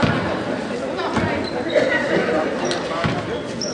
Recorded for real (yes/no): yes